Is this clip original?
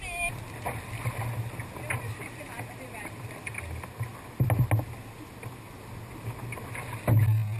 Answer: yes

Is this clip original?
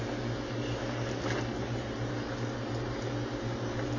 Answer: yes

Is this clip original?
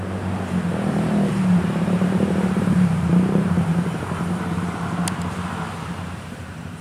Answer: no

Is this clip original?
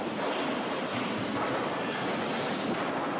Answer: no